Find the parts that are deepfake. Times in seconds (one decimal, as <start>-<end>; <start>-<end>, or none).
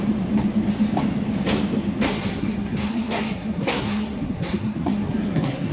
2.1-5.7